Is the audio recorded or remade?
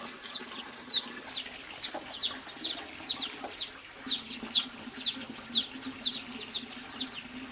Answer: recorded